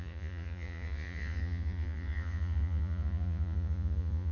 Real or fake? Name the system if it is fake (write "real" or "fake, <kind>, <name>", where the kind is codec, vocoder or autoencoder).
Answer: fake, vocoder, Vocos